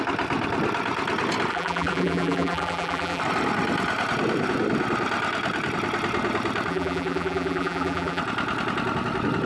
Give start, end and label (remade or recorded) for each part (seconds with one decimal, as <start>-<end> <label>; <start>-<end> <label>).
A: 0.0-1.5 recorded; 1.5-3.2 remade; 3.2-6.7 recorded; 6.7-8.2 remade; 8.2-9.5 recorded